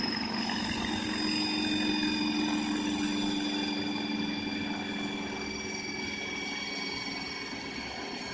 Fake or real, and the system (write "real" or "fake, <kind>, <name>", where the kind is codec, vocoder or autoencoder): real